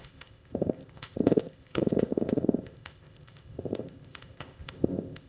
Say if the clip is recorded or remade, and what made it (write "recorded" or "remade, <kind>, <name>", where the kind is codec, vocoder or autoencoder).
remade, codec, ZipCodec